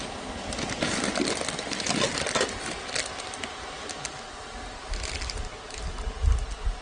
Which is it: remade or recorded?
recorded